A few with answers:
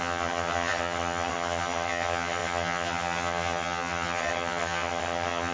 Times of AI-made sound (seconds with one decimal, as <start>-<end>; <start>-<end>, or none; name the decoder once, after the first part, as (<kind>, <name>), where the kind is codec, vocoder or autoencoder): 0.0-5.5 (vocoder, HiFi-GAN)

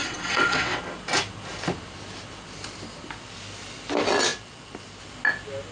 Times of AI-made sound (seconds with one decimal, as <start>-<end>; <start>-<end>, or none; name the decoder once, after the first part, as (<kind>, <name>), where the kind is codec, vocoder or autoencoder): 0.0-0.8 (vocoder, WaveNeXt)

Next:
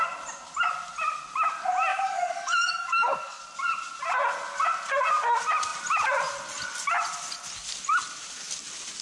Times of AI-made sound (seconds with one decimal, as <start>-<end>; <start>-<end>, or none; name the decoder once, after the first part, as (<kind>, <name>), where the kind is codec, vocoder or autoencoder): 1.9-3.4 (codec, DAC)

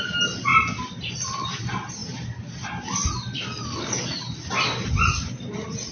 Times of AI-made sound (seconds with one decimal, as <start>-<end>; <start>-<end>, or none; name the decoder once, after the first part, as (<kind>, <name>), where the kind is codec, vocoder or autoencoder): none